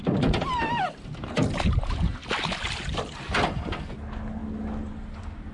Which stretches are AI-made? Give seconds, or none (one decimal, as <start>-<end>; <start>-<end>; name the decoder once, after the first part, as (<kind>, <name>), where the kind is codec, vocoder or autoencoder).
none